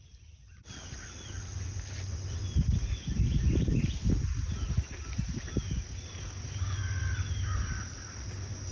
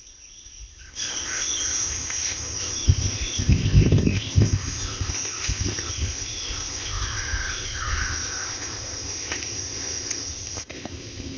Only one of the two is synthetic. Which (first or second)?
second